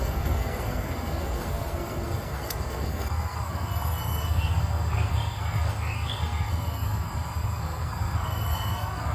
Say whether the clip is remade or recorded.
remade